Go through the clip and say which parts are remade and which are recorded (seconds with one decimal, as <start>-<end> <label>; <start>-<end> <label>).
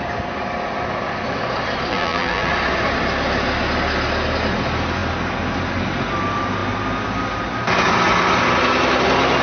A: 0.0-1.9 recorded; 1.9-2.5 remade; 2.5-9.4 recorded